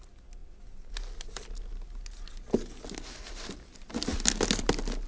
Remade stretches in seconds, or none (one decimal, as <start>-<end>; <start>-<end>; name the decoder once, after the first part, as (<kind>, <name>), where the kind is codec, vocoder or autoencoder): none